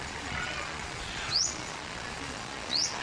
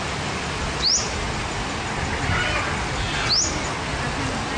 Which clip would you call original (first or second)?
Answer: second